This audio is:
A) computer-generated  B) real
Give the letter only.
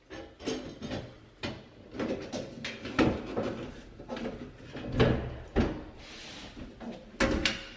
B